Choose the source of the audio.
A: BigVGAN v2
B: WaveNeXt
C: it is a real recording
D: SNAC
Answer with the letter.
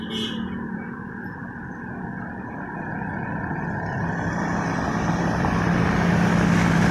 C